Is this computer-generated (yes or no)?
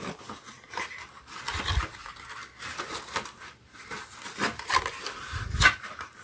no